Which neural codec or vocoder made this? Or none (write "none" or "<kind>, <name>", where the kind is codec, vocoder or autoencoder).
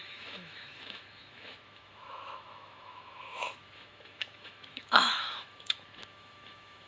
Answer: autoencoder, DAC-VAE